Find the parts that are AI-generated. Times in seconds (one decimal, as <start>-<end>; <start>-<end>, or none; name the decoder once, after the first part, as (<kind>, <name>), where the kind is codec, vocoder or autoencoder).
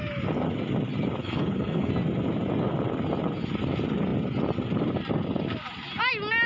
1.2-1.9 (codec, HILCodec)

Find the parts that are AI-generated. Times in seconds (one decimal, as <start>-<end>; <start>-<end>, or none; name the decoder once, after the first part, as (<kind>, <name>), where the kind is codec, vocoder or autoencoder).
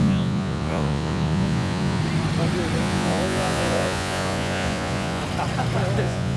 0.0-2.0 (vocoder, Vocos); 2.8-5.2; 6.0-6.4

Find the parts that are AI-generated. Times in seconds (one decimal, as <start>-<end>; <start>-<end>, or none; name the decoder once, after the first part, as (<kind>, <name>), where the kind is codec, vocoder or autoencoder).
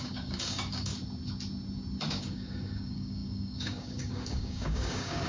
0.0-0.9 (codec, DAC); 2.1-5.3